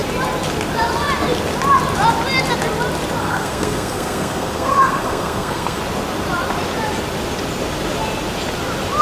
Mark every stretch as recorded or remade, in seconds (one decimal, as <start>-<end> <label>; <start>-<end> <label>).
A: 0.0-3.2 recorded; 3.2-5.8 remade; 5.8-9.0 recorded